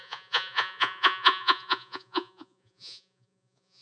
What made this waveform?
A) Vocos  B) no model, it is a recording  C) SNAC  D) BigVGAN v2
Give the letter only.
A